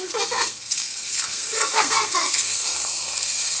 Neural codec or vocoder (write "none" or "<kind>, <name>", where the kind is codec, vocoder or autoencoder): codec, SNAC